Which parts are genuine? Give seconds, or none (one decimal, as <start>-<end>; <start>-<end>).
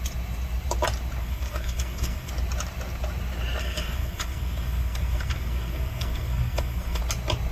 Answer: 0.0-1.2; 2.3-3.6; 7.0-7.5